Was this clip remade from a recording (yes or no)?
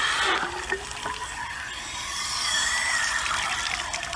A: no